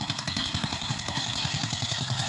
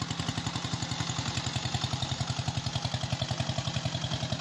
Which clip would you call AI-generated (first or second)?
first